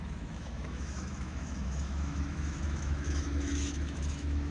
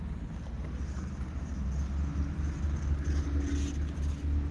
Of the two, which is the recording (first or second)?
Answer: second